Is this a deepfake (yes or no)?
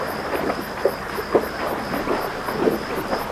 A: no